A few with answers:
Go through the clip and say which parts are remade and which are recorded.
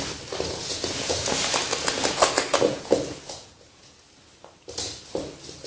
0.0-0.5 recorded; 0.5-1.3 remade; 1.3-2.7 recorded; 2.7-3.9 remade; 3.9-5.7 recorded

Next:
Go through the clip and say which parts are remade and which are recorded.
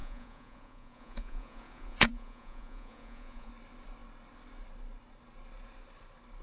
0.0-3.5 remade; 3.5-6.4 recorded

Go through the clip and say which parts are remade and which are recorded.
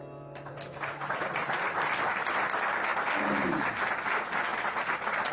0.0-5.3 recorded